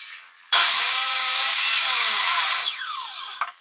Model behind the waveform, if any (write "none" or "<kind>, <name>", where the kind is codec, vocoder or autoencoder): codec, DAC